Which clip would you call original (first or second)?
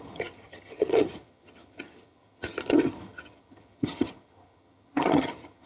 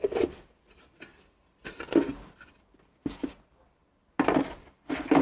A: second